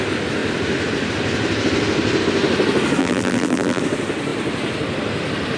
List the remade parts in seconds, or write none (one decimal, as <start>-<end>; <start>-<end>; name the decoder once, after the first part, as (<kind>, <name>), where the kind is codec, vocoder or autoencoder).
3.0-3.8 (vocoder, BigVGAN v2)